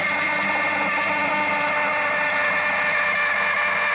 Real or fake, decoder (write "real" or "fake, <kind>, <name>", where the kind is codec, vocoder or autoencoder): real